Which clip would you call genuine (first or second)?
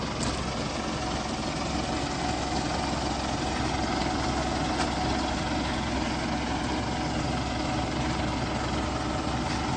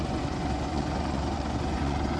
first